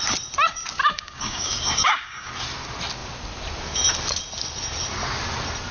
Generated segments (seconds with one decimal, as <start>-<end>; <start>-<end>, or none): 0.8-2.3